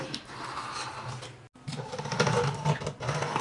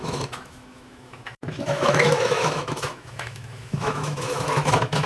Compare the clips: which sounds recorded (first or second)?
first